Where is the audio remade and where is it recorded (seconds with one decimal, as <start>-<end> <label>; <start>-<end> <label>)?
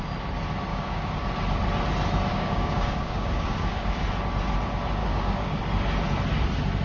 0.0-0.7 recorded; 0.7-1.2 remade; 1.2-2.3 recorded; 2.3-4.0 remade; 4.0-5.0 recorded; 5.0-5.6 remade; 5.6-6.8 recorded